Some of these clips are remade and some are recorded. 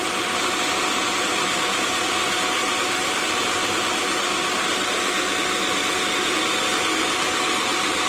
recorded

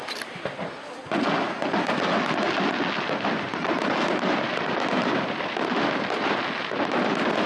recorded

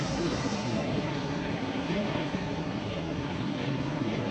remade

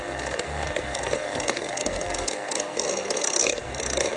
remade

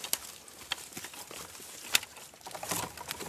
recorded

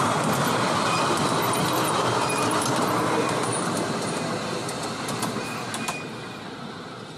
recorded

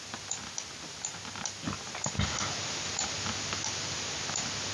recorded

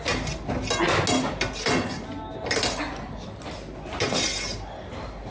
recorded